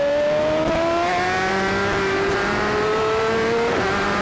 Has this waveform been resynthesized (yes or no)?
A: yes